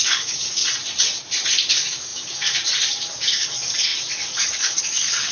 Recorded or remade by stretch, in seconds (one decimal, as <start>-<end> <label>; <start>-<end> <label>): 0.0-0.6 remade; 0.6-1.7 recorded; 1.7-5.3 remade